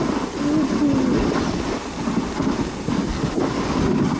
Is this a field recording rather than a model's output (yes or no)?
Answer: yes